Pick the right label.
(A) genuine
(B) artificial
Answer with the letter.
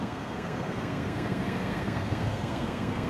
B